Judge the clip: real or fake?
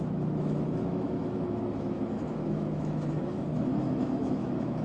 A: fake